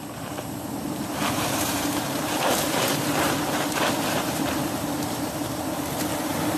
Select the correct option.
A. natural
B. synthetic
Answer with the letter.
B